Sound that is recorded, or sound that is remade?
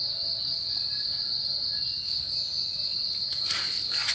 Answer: recorded